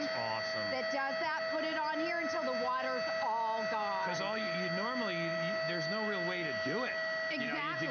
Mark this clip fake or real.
real